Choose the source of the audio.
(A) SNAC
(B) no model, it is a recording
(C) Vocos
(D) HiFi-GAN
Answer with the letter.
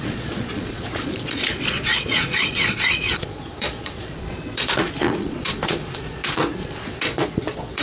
C